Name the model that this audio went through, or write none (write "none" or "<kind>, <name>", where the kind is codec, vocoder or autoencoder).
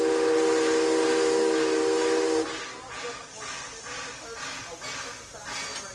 none